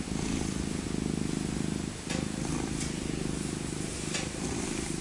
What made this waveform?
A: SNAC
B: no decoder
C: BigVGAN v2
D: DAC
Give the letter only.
B